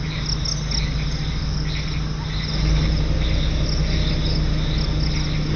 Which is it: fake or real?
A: real